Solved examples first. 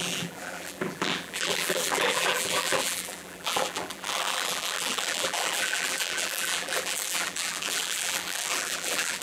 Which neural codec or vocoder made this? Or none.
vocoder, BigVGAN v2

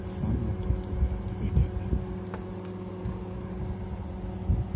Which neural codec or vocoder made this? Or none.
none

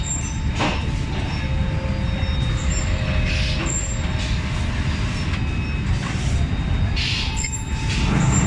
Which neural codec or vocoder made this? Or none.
none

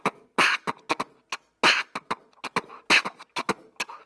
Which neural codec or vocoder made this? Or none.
none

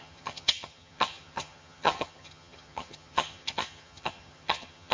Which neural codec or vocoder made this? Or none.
vocoder, HiFi-GAN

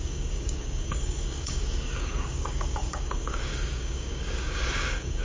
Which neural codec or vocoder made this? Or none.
codec, DAC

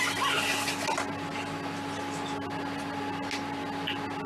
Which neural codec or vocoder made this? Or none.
none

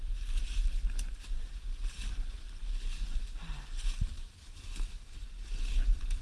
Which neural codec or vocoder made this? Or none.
none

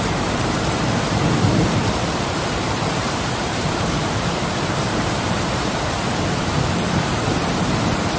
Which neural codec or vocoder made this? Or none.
vocoder, BigVGAN v2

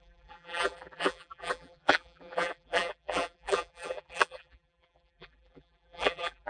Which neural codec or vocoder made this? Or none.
vocoder, BigVGAN v2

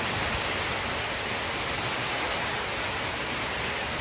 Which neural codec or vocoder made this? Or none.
none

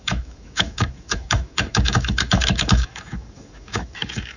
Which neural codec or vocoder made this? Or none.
autoencoder, DAC-VAE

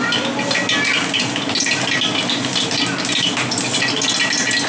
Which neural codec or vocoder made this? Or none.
none